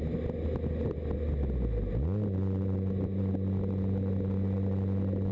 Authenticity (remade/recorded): recorded